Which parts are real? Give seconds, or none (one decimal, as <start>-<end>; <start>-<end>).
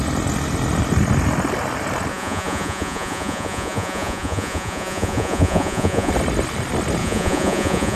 0.0-2.1; 6.1-7.0